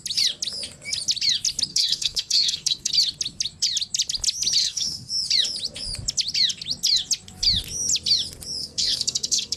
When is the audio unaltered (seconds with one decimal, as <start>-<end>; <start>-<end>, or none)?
0.0-1.7; 2.9-4.6; 5.1-8.6